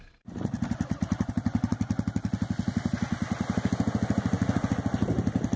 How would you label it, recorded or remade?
recorded